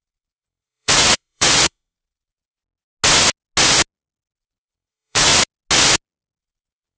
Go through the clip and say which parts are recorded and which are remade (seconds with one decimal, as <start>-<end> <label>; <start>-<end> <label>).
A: 0.0-2.6 remade; 2.6-4.4 recorded; 4.4-5.3 remade; 5.3-6.4 recorded; 6.4-7.0 remade